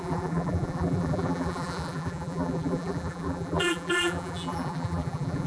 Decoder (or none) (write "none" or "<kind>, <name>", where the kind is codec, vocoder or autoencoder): vocoder, BigVGAN v2